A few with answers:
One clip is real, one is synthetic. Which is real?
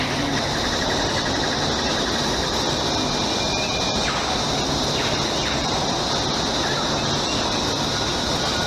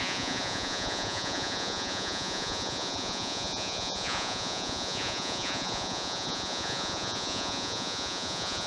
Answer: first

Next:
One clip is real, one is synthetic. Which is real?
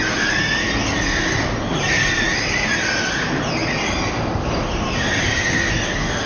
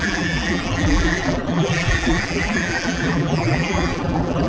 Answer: first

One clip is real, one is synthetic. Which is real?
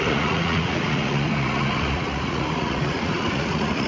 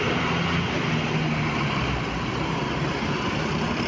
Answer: second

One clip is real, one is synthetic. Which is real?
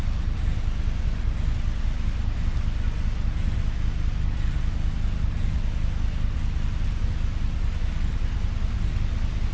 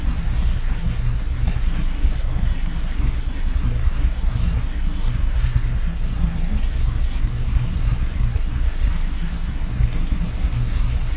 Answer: first